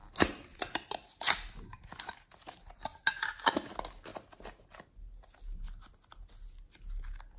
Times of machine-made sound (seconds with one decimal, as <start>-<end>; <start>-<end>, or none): 0.5-1.3; 2.9-3.5